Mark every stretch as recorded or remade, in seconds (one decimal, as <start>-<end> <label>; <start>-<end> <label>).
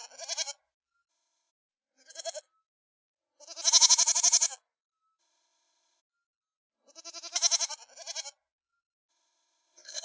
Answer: 0.0-1.1 recorded; 1.1-1.5 remade; 1.5-5.2 recorded; 5.2-6.0 remade; 6.0-9.1 recorded; 9.1-10.0 remade